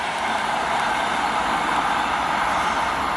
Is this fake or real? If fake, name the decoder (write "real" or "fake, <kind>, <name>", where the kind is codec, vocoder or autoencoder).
real